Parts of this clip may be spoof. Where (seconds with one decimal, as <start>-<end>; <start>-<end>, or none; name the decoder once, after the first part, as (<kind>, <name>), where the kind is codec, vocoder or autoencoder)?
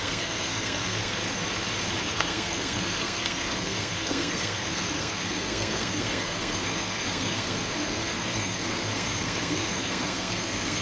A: 0.0-1.2 (codec, SNAC); 2.0-10.8